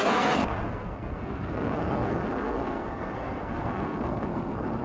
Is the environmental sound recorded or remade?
remade